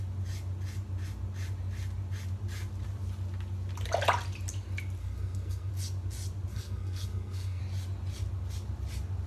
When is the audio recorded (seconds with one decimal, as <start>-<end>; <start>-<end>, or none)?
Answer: 0.0-5.0; 5.7-6.5; 7.6-9.3